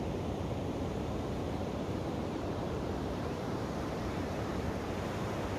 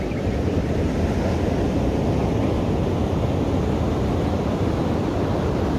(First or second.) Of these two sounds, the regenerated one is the first